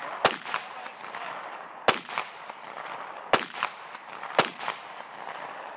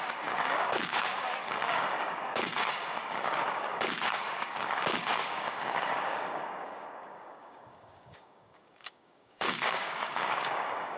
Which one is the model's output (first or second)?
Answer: second